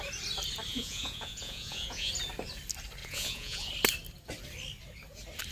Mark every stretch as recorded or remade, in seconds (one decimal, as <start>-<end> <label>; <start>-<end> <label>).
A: 0.0-0.7 recorded; 0.7-2.1 remade; 2.1-3.0 recorded; 3.0-3.7 remade; 3.7-5.5 recorded